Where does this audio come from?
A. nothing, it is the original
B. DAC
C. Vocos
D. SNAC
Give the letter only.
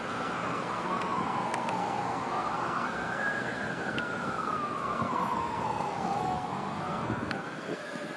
D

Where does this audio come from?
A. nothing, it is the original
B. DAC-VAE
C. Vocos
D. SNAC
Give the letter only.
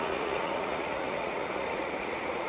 C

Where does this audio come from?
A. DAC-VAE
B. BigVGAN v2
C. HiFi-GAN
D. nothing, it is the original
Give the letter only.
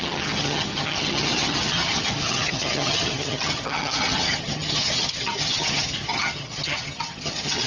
C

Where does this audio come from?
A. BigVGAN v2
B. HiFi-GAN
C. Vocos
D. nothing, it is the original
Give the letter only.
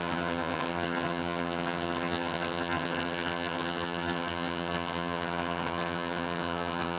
B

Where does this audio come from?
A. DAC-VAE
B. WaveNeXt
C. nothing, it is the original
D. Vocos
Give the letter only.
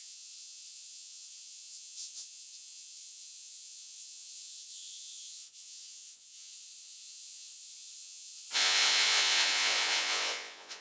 D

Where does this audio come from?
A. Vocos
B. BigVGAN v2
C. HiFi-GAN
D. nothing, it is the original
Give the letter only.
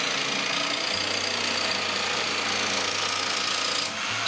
D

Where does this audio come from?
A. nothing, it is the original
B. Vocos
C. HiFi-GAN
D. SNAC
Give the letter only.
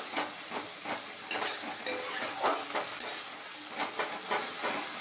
A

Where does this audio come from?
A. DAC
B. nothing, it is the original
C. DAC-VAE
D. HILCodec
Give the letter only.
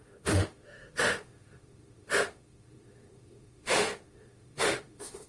C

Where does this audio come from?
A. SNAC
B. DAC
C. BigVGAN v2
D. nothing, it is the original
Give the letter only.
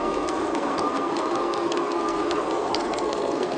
A